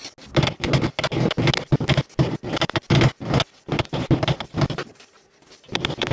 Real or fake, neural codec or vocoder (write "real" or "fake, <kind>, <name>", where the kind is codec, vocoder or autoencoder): real